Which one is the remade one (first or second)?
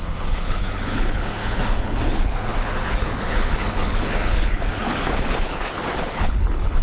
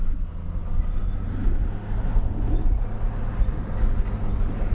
first